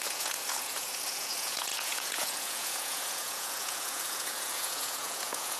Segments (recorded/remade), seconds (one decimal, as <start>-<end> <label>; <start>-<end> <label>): 0.0-5.6 remade